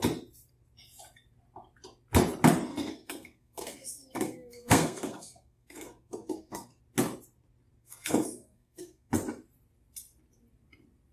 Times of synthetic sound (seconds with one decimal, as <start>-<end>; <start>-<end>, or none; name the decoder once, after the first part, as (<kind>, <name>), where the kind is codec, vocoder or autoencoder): 2.7-6.8 (codec, SNAC); 7.8-9.1